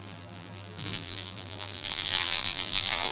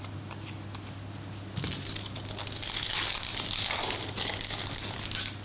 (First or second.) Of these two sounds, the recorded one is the second